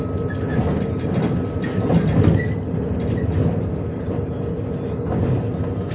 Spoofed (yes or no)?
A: no